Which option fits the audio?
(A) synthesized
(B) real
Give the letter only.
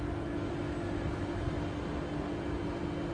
B